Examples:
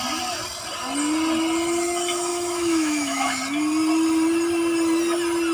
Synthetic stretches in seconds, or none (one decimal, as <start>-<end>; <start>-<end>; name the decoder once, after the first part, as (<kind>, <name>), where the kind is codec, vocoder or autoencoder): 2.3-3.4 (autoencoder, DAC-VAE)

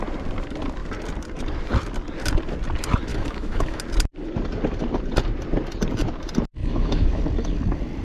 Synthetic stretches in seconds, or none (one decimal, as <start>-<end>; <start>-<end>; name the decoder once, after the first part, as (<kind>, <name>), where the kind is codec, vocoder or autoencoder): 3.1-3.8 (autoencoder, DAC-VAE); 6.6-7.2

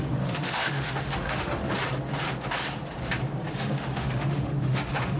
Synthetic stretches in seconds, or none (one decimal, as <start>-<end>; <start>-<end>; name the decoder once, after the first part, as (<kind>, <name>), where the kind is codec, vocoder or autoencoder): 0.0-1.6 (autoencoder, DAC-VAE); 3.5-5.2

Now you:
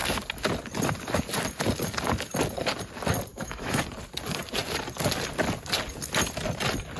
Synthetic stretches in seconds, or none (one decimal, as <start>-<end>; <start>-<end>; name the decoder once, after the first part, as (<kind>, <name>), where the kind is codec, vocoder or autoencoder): 3.3-3.8 (autoencoder, DAC-VAE)

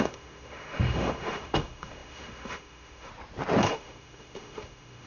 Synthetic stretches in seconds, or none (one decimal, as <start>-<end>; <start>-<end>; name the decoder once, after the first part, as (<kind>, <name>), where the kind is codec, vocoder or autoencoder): 0.0-3.1 (autoencoder, DAC-VAE); 3.6-5.1

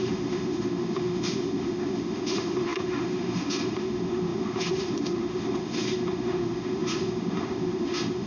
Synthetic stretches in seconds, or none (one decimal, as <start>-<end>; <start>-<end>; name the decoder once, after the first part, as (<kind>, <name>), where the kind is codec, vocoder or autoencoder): 0.0-8.3 (autoencoder, DAC-VAE)

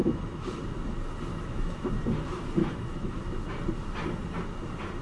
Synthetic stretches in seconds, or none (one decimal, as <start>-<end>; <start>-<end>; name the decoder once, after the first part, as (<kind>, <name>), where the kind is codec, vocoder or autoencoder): 0.0-0.6 (autoencoder, DAC-VAE); 1.3-1.9; 2.6-3.2

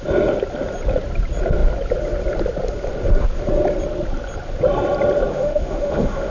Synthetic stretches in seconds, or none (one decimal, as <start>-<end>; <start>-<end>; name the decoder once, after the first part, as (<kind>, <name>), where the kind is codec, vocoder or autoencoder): 5.3-6.3 (autoencoder, DAC-VAE)